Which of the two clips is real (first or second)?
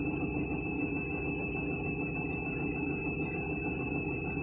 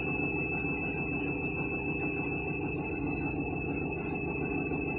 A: second